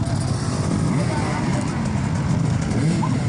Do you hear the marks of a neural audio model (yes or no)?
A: no